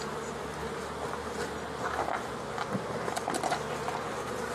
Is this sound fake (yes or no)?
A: no